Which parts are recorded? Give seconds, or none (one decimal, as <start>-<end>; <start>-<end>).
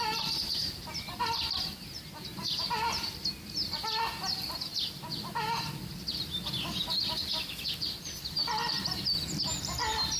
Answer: 0.0-3.6; 4.7-7.2